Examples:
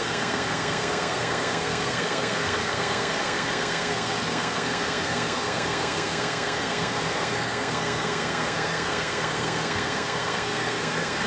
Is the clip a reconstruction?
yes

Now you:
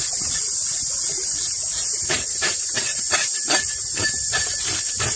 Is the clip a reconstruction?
yes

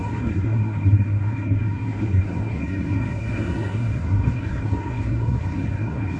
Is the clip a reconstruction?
yes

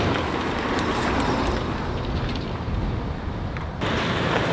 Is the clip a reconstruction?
no